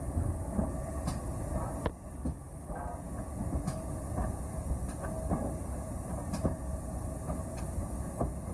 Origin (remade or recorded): recorded